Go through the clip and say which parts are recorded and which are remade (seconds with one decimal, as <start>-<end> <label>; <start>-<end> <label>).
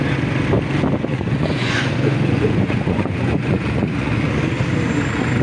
0.0-1.1 recorded; 1.1-4.3 remade; 4.3-5.4 recorded